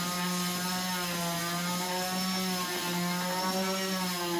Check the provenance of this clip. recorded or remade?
recorded